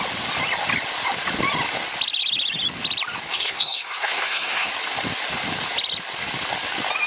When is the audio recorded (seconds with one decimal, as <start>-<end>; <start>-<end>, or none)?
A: 0.0-3.3; 4.7-7.1